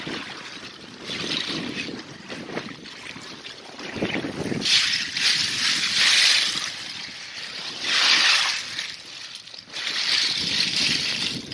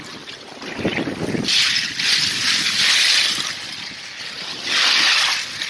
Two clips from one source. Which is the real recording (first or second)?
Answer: second